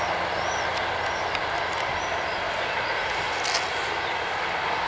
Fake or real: real